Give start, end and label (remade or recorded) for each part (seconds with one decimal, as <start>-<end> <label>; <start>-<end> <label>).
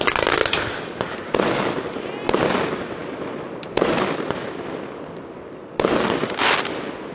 0.0-7.1 recorded